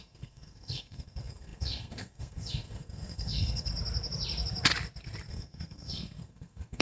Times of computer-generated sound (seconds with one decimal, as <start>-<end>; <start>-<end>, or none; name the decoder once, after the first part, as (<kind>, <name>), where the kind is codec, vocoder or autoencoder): 0.0-3.7 (codec, SNAC); 5.3-6.8

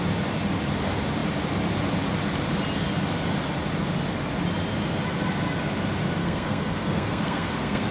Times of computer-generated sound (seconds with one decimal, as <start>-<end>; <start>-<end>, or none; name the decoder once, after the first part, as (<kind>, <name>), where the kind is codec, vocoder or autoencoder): 6.2-7.9 (codec, SNAC)

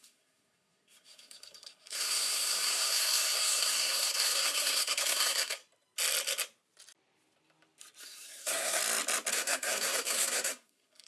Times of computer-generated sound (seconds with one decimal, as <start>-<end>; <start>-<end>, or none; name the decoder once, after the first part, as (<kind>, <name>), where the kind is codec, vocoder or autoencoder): 0.0-5.6 (codec, SNAC); 8.0-8.8; 9.3-11.1

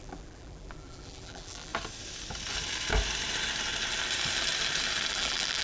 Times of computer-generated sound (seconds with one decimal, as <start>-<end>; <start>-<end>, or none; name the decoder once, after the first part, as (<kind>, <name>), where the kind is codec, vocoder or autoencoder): 0.0-1.7 (vocoder, BigVGAN v2); 5.1-5.6

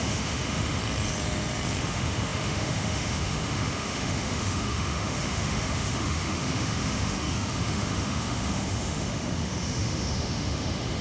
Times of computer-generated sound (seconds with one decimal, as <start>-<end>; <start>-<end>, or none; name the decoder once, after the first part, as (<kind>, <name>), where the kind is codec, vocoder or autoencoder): 0.0-0.8 (autoencoder, DAC-VAE); 1.8-11.0

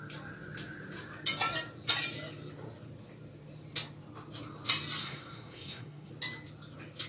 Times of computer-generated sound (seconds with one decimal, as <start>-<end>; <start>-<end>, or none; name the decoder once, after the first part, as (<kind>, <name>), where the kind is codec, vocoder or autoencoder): 5.0-6.1 (codec, SNAC)

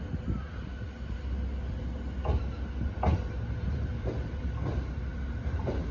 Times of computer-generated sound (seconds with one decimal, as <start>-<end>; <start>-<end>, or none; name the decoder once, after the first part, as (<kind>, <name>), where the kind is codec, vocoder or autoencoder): none

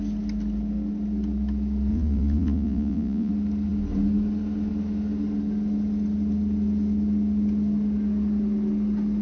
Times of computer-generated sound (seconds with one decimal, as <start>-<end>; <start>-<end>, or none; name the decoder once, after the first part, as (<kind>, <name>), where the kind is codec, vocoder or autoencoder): 1.9-3.3 (vocoder, Vocos)